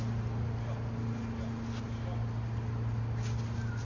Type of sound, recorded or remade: recorded